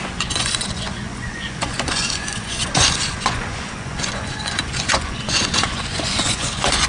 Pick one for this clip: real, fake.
fake